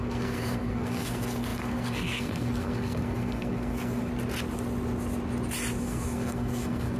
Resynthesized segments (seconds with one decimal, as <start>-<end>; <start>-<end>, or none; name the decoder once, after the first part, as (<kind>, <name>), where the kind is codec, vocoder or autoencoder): 0.0-4.1 (codec, SNAC); 5.8-7.0